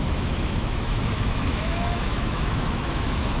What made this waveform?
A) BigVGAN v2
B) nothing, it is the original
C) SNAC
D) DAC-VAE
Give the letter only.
D